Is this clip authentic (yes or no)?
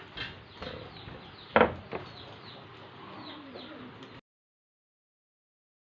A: yes